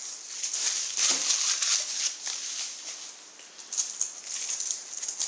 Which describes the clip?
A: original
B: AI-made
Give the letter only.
A